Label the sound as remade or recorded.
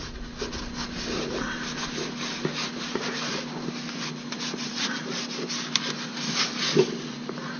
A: recorded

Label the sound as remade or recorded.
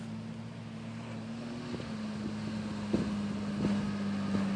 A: recorded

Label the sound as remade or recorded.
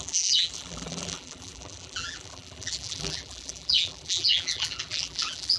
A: remade